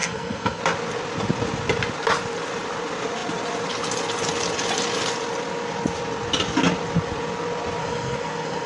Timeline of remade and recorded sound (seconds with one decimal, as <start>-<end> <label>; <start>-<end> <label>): 0.0-0.6 remade; 0.6-7.8 recorded; 7.8-8.7 remade